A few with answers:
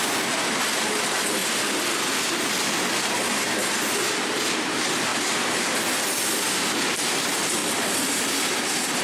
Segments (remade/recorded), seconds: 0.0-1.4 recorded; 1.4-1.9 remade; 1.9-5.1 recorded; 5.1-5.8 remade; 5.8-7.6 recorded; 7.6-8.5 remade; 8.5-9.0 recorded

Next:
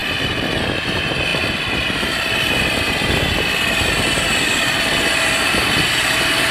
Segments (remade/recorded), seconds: 0.0-6.5 recorded

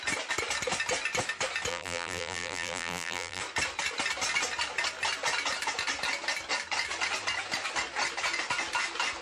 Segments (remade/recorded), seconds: 0.0-1.7 recorded; 1.7-3.4 remade; 3.4-9.2 recorded

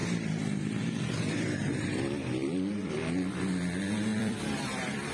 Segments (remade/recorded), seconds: 0.0-1.8 remade; 1.8-2.4 recorded; 2.4-3.3 remade; 3.3-4.1 recorded; 4.1-5.1 remade